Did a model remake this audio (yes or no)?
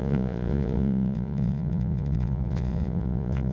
yes